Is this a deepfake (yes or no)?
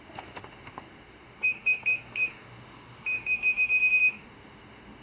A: yes